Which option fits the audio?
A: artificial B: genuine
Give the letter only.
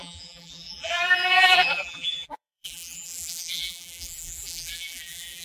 A